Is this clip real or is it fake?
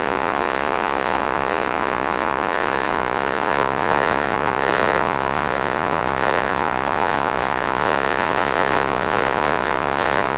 fake